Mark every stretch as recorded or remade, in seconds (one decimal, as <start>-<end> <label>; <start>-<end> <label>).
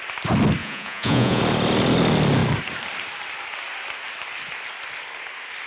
0.0-0.6 recorded; 0.6-1.4 remade; 1.4-5.7 recorded